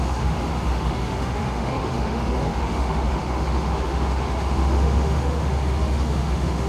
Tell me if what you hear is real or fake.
fake